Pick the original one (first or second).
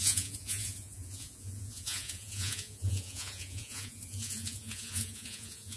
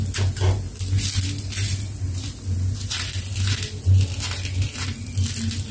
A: second